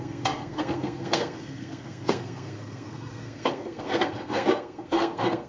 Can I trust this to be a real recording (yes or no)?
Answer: no